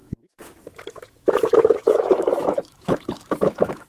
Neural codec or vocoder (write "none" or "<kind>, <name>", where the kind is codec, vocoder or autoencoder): autoencoder, DAC-VAE